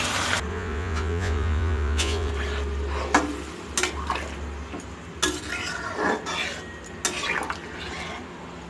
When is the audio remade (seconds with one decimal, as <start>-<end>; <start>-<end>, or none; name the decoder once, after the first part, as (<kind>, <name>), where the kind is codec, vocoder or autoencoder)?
0.5-2.3 (vocoder, Vocos)

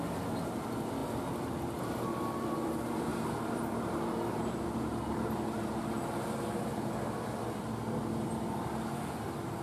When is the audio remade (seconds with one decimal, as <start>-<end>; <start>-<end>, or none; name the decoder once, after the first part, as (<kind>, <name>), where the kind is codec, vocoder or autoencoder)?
none

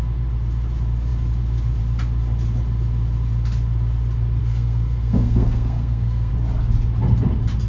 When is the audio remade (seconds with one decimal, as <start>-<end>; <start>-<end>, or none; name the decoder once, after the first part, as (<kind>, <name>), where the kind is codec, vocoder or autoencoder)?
4.4-6.3 (codec, SNAC)

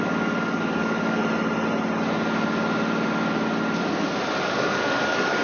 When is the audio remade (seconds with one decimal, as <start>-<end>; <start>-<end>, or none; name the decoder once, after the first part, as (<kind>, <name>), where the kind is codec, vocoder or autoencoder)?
0.0-1.2 (codec, DAC); 4.4-5.4

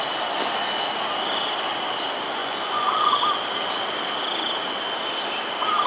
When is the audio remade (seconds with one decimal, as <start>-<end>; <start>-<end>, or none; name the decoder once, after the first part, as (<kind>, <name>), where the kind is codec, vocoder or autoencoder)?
2.4-3.2 (vocoder, Vocos)

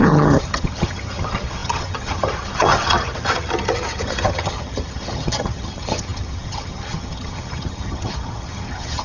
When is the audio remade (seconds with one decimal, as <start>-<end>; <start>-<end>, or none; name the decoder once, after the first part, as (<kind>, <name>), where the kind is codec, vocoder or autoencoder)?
0.0-9.0 (vocoder, HiFi-GAN)

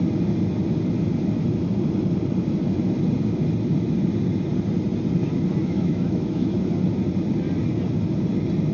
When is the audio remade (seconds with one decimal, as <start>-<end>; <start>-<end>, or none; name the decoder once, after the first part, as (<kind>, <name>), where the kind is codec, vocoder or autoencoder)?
5.6-6.7 (autoencoder, DAC-VAE)